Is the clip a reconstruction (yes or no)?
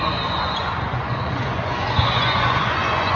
yes